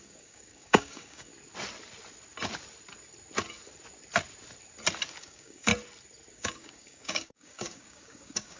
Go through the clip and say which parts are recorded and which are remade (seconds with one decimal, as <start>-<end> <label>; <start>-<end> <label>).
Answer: 0.0-1.3 remade; 1.3-5.2 recorded; 5.2-5.7 remade; 5.7-6.3 recorded; 6.3-8.6 remade